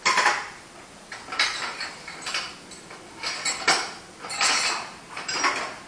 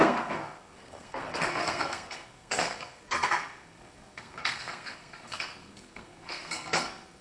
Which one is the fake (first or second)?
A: second